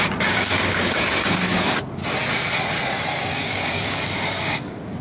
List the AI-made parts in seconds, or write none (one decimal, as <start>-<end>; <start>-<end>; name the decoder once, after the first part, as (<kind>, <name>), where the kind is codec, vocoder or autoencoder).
0.0-2.0 (codec, DAC); 3.0-5.0